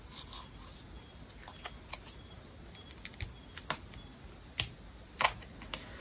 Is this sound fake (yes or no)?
no